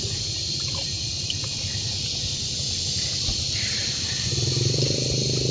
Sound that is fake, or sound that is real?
real